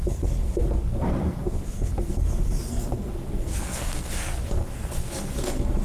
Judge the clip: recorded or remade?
remade